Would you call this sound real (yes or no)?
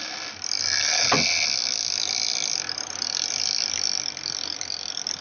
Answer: yes